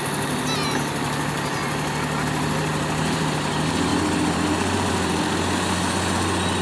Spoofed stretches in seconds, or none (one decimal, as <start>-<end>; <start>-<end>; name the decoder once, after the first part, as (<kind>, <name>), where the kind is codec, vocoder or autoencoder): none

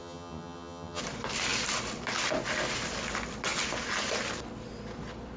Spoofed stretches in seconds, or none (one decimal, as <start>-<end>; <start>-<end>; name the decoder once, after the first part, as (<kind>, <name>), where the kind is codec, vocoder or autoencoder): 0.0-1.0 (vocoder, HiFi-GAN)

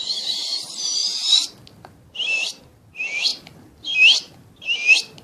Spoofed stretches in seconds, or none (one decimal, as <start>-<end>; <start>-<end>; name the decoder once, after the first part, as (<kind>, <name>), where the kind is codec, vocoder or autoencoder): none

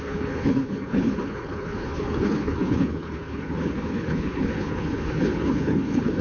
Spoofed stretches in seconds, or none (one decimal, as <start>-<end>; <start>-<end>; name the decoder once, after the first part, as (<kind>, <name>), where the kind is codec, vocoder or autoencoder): 0.0-6.2 (codec, HILCodec)